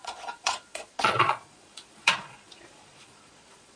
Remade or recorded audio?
remade